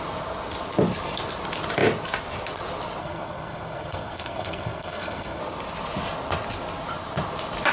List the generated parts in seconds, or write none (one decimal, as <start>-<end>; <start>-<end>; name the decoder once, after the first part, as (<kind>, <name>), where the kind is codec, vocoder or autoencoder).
3.0-5.4 (codec, SNAC)